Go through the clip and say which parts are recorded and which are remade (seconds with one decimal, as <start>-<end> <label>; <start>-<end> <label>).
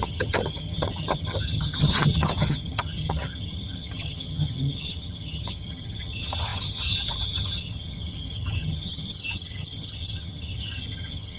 0.0-11.4 remade